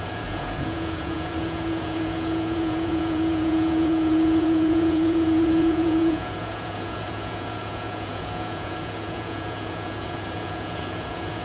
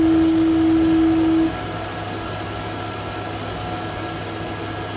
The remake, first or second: first